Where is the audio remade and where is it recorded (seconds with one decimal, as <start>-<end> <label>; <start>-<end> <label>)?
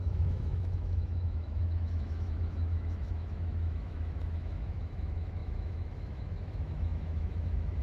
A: 0.0-7.8 remade